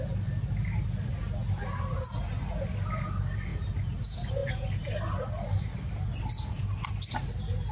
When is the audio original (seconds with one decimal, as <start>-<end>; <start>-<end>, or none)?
0.0-7.7